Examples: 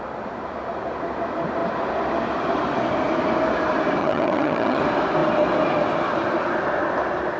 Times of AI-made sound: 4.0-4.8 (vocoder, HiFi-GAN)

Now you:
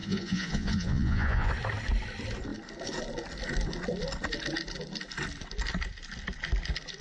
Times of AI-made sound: 0.0-1.5 (vocoder, Vocos)

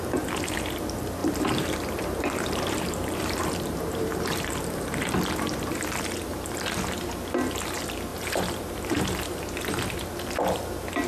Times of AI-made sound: 1.2-5.1 (vocoder, BigVGAN v2); 6.3-6.8; 8.1-9.4

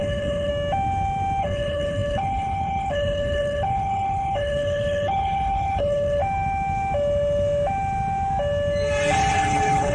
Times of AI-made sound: 0.0-0.5 (codec, HILCodec); 1.4-6.2; 9.1-9.9

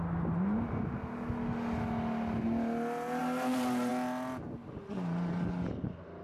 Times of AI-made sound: none

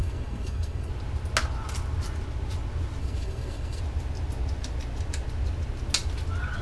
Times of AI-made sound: 0.0-0.9 (codec, SNAC); 3.0-3.8